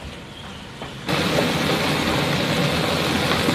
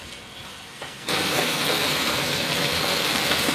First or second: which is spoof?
second